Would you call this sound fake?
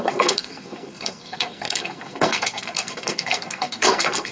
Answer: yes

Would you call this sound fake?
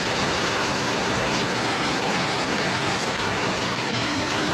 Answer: yes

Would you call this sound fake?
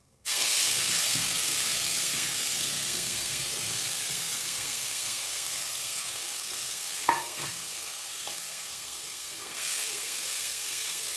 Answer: yes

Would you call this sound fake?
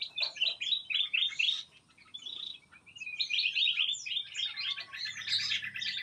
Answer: no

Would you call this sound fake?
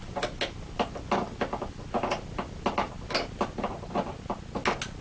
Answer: no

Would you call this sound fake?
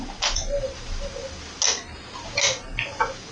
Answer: no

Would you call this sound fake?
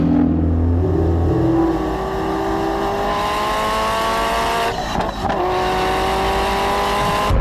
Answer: no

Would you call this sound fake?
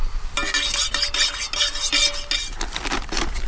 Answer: no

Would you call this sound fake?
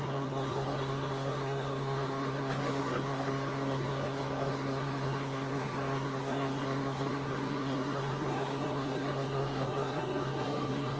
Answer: yes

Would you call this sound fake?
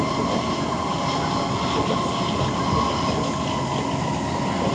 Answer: no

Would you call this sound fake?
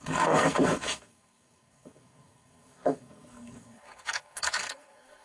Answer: yes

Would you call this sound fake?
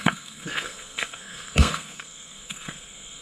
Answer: yes